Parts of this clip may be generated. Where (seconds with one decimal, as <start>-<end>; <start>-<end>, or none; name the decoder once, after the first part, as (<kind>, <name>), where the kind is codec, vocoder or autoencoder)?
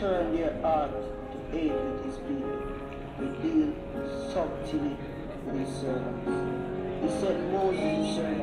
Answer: none